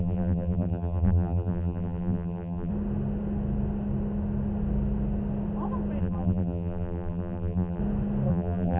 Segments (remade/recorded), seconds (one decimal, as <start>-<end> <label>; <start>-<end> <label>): 0.0-2.7 remade; 2.7-6.0 recorded; 6.0-7.8 remade; 7.8-8.3 recorded; 8.3-8.8 remade